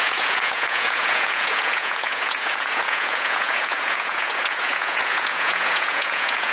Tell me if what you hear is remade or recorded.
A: remade